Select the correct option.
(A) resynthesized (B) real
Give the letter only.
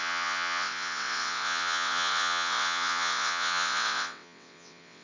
A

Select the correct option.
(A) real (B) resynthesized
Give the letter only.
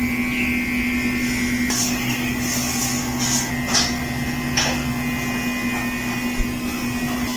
A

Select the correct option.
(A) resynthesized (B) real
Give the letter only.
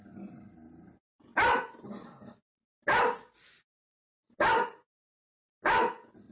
B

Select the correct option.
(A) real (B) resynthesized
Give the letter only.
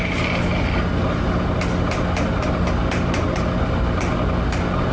A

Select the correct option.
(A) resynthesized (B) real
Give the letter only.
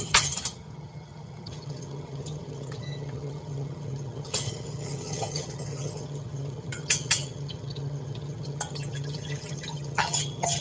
A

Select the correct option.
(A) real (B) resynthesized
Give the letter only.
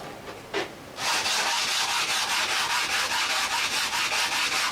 A